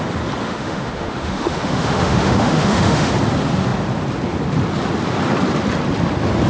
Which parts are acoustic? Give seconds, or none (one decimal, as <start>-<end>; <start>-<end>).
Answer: 0.0-0.4; 3.1-6.5